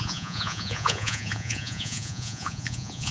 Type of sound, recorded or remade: remade